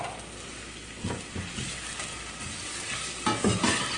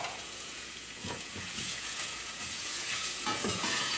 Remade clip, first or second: second